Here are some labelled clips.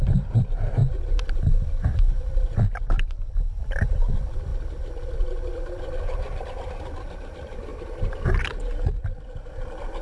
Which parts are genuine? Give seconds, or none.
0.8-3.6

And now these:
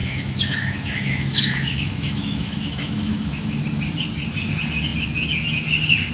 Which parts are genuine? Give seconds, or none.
3.6-6.1

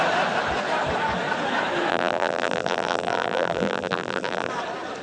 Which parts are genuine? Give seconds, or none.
0.0-1.9; 4.5-5.0